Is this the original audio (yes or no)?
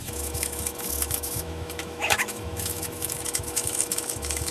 no